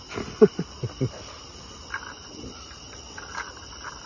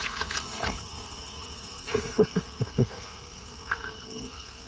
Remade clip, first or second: second